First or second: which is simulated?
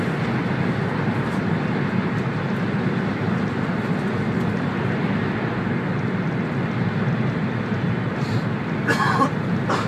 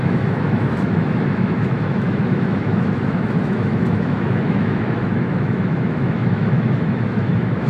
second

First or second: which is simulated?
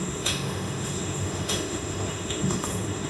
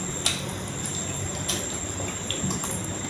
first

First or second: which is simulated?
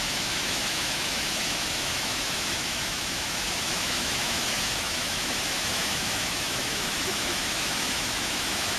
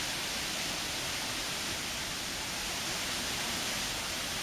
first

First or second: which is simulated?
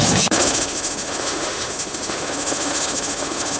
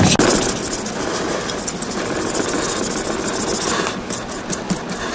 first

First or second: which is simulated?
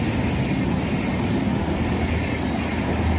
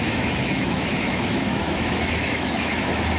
second